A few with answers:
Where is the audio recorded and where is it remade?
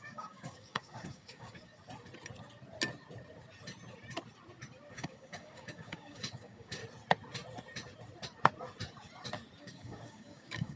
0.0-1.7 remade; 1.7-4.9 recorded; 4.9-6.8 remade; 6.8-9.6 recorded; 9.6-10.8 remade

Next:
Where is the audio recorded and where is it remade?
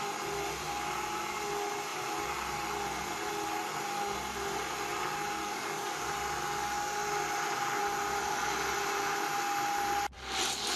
0.0-5.4 recorded; 5.4-5.9 remade; 5.9-10.8 recorded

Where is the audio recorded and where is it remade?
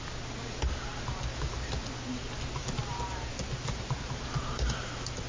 0.0-5.3 recorded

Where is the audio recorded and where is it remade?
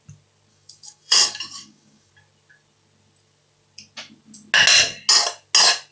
0.0-0.5 recorded; 0.5-2.1 remade; 2.1-5.9 recorded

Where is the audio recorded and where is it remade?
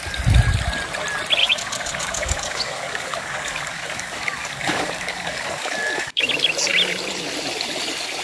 0.0-1.4 recorded; 1.4-6.3 remade; 6.3-8.2 recorded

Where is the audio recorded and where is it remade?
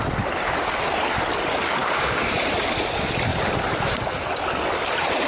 0.0-1.8 recorded; 1.8-2.3 remade; 2.3-5.3 recorded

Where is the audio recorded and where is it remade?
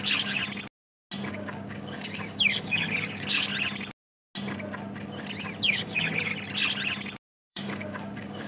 0.0-0.4 remade; 0.4-1.3 recorded; 1.3-3.5 remade; 3.5-5.6 recorded; 5.6-6.3 remade; 6.3-7.5 recorded; 7.5-8.5 remade